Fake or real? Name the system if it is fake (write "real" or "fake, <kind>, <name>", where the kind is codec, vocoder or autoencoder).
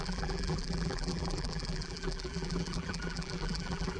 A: fake, vocoder, BigVGAN v2